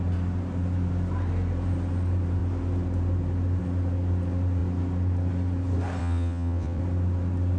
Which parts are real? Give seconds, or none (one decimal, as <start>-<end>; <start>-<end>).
0.0-6.0; 6.8-7.6